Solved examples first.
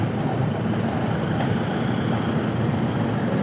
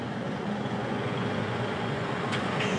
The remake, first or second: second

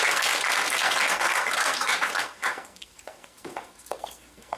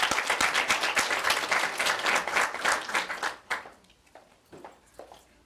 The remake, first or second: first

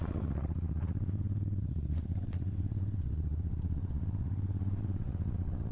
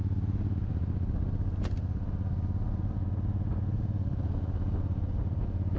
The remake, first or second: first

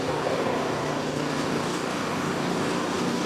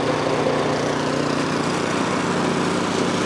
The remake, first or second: first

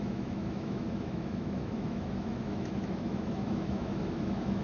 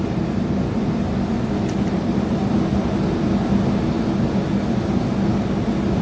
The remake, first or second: first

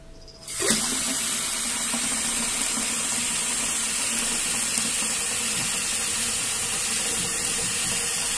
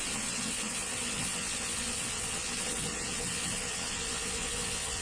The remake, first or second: second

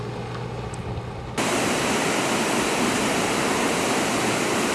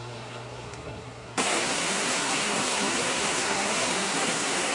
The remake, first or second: second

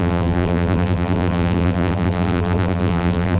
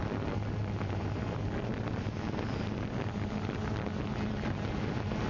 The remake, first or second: first